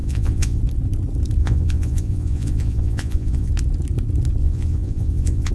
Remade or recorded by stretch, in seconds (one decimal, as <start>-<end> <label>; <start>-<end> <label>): 0.0-0.6 remade; 0.6-1.4 recorded; 1.4-3.5 remade; 3.5-4.4 recorded; 4.4-5.5 remade